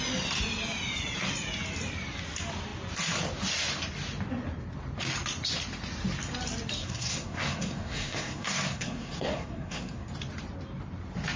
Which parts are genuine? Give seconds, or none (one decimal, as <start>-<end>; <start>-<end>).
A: 0.0-6.8; 10.1-11.4